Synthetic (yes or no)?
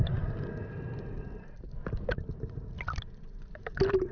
no